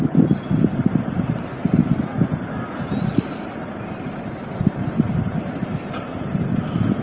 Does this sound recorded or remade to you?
recorded